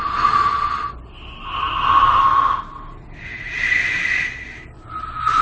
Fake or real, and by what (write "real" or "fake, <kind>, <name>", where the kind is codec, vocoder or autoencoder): real